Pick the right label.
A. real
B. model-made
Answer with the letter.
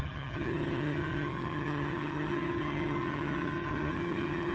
B